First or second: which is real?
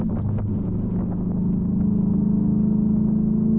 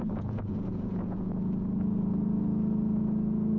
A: first